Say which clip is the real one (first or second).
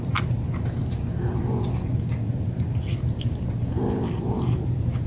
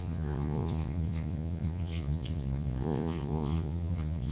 first